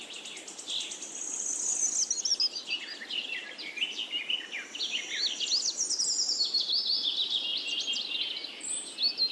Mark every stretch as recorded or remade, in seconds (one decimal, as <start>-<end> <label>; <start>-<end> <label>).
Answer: 0.0-9.3 recorded